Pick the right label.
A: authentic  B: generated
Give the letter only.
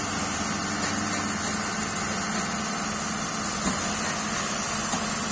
A